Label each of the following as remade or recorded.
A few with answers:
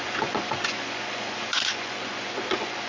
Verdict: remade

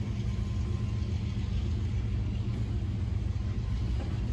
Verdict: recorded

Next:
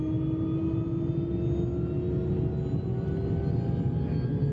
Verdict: recorded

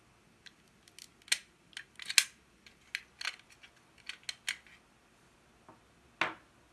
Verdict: recorded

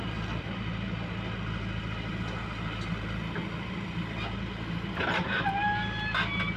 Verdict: recorded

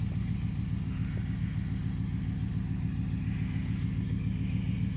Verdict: recorded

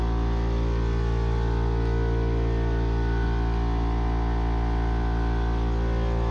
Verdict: recorded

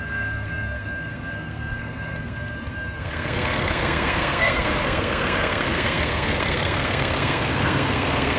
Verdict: remade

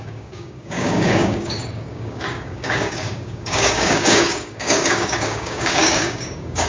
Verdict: remade